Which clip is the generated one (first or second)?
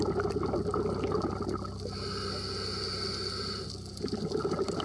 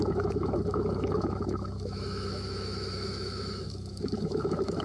second